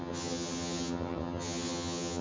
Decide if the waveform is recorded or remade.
remade